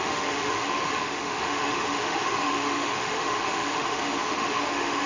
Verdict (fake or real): fake